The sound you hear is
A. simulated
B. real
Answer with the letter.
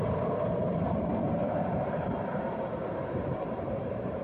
A